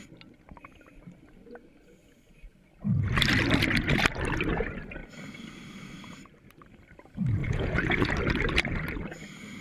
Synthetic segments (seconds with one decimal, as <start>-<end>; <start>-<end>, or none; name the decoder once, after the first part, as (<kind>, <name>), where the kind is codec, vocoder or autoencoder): 7.4-8.1 (vocoder, Vocos)